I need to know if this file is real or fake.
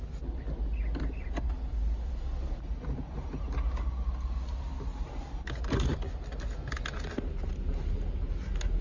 real